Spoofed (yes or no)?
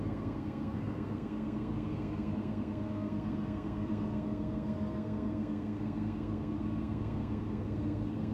yes